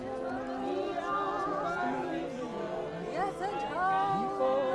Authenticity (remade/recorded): recorded